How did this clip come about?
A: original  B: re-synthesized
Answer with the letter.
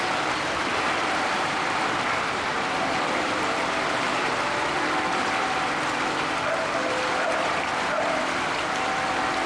B